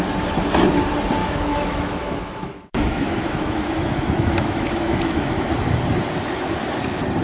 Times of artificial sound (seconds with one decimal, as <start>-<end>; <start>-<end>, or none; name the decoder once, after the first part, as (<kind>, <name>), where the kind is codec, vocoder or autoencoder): 1.2-5.5 (autoencoder, DAC-VAE)